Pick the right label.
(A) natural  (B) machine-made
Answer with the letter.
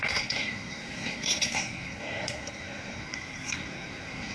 B